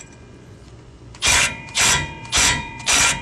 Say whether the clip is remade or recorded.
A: remade